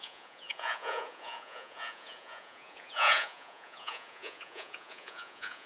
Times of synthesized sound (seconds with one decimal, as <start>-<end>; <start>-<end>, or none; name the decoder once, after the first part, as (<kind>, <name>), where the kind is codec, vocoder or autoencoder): 0.0-5.7 (vocoder, Vocos)